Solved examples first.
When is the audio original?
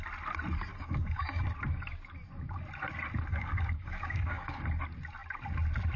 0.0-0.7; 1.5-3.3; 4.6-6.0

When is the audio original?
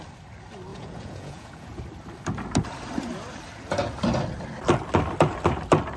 0.0-0.7; 1.8-6.0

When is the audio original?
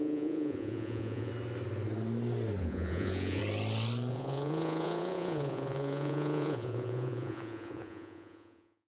1.3-2.6; 3.4-4.1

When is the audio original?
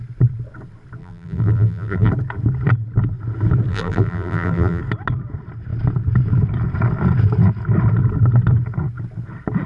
0.0-1.0; 2.1-3.7; 4.8-9.7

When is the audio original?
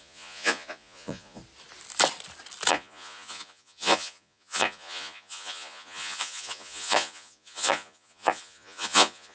1.4-2.7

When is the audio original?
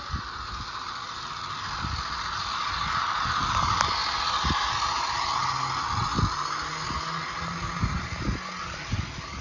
0.0-9.4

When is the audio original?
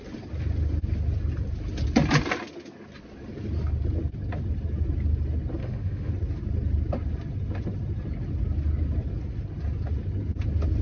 0.0-5.6; 6.1-10.8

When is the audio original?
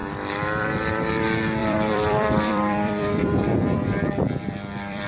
1.1-1.6